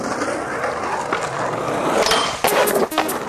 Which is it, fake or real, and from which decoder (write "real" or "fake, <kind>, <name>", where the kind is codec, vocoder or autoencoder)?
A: real